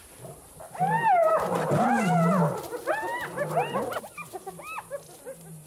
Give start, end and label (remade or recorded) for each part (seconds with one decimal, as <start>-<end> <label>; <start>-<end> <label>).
0.0-5.7 recorded